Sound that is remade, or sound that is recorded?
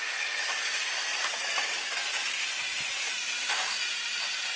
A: recorded